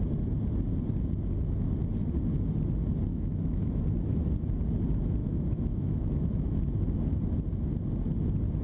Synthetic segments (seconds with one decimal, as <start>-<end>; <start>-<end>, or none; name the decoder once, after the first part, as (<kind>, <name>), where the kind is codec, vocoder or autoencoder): 3.1-3.8 (autoencoder, DAC-VAE); 5.2-6.6